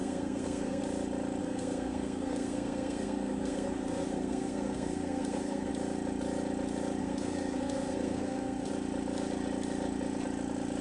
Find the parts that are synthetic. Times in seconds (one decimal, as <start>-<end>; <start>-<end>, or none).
0.0-0.8; 1.4-5.7; 7.0-8.7